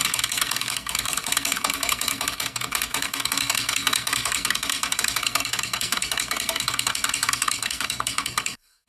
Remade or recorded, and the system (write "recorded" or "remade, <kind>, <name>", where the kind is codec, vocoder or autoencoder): remade, codec, SNAC